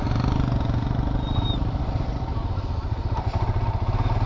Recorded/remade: recorded